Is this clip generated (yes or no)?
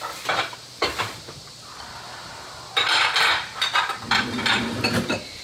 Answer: no